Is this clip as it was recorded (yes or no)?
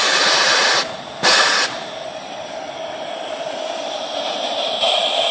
yes